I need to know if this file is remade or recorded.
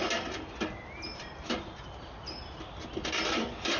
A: recorded